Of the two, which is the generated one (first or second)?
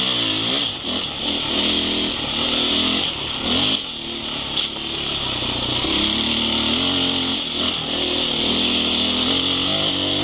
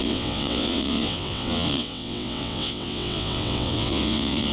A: second